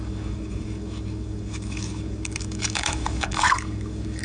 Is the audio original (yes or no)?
no